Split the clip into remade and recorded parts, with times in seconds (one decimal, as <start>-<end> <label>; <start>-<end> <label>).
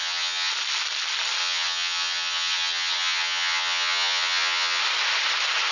0.0-0.5 remade; 0.5-1.4 recorded; 1.4-4.8 remade; 4.8-5.7 recorded